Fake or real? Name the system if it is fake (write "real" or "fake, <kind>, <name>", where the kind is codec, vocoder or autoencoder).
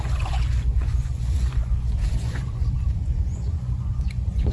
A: fake, vocoder, Vocos